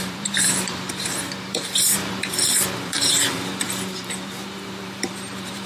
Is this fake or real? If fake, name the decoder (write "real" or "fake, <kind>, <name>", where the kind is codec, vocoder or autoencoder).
fake, vocoder, BigVGAN v2